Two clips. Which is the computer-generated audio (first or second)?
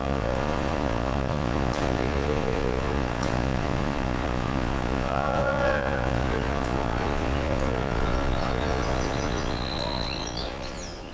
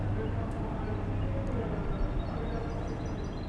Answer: first